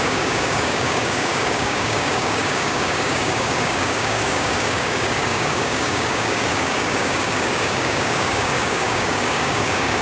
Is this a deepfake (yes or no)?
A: yes